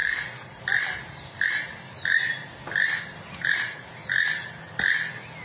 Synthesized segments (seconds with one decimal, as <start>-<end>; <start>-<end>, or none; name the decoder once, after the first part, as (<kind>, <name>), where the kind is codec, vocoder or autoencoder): none